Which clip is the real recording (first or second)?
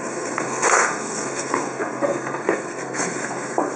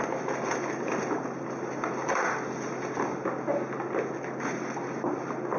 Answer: second